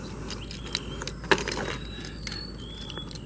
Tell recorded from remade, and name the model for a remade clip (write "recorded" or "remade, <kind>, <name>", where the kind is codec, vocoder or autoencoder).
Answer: recorded